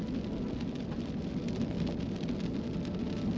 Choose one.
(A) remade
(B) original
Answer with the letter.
B